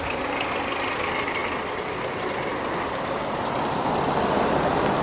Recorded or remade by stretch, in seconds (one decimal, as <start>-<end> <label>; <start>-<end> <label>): 0.0-5.0 recorded